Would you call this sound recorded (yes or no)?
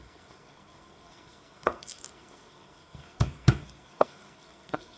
no